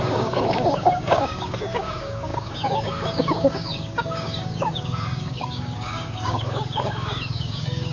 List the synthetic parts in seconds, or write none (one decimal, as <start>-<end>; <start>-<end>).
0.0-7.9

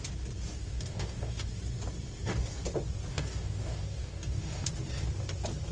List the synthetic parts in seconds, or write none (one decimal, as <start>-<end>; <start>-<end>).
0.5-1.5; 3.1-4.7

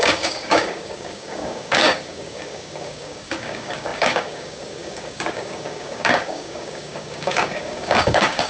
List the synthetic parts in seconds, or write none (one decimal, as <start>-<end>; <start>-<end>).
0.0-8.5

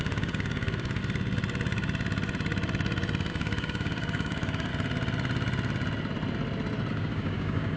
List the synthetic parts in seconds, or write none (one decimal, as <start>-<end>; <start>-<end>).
0.0-1.0; 3.3-4.7; 6.9-7.8